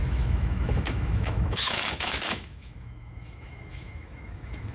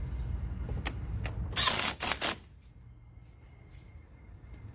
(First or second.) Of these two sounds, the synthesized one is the first